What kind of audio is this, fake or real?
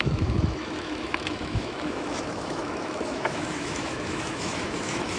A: fake